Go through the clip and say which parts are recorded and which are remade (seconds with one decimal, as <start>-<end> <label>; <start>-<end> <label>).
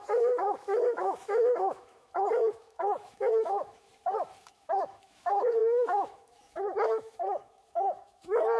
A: 0.0-3.9 remade; 3.9-4.4 recorded; 4.4-8.6 remade